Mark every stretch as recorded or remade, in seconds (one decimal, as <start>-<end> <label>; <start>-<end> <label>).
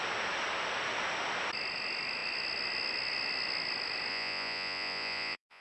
0.0-4.1 recorded; 4.1-5.6 remade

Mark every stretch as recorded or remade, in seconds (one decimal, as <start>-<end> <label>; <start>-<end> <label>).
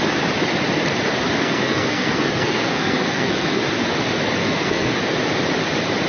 0.0-1.4 recorded; 1.4-3.6 remade; 3.6-4.4 recorded; 4.4-4.9 remade; 4.9-6.1 recorded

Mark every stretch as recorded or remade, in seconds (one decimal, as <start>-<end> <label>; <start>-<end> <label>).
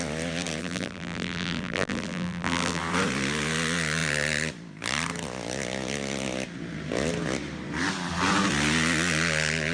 0.0-0.6 recorded; 0.6-2.8 remade; 2.8-9.7 recorded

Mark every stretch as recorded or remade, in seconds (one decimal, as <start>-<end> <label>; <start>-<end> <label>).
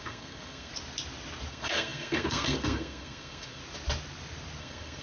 0.0-0.7 remade; 0.7-1.5 recorded; 1.5-3.6 remade; 3.6-4.6 recorded; 4.6-5.0 remade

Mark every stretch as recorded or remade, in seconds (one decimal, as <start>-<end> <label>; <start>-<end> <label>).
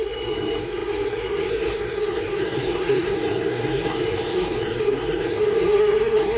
0.0-6.4 remade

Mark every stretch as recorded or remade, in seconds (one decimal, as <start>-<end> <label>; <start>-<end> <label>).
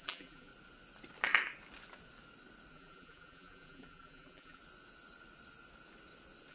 0.0-0.5 remade; 0.5-2.7 recorded; 2.7-4.6 remade; 4.6-6.5 recorded